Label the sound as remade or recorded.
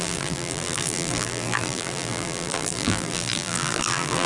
remade